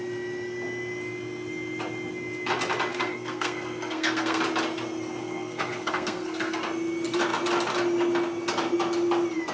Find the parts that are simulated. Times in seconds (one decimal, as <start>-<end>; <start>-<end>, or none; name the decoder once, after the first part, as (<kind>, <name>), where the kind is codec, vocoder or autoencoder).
2.9-4.4 (codec, SNAC); 5.2-6.6